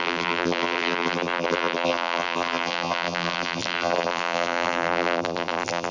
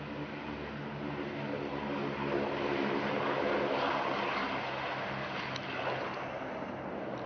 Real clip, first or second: second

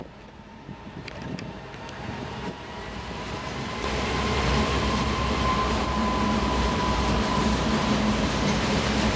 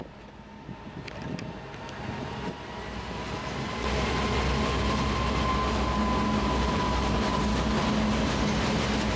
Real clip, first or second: second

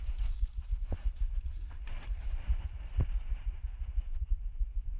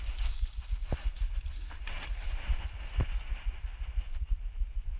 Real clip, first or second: second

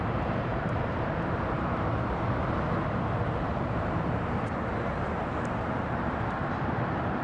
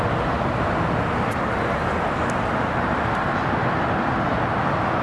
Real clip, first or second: second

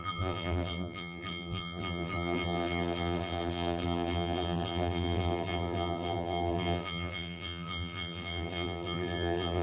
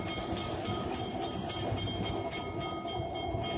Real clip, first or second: second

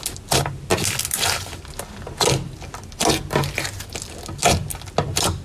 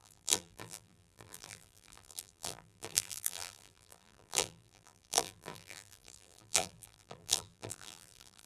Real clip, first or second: first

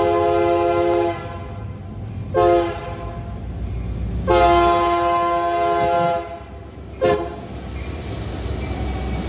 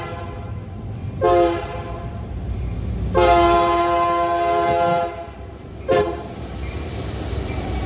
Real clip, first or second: first